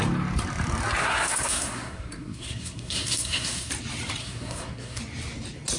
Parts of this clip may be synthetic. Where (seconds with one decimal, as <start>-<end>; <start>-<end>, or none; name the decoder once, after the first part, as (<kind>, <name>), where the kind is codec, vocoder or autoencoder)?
1.0-3.7 (codec, SNAC); 4.2-5.0